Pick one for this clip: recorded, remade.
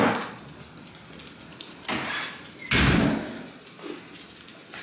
recorded